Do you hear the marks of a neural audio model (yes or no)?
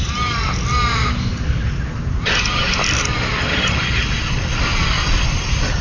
no